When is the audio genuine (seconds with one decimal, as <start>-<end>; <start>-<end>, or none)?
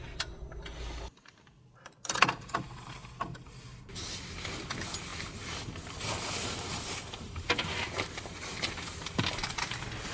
0.0-10.1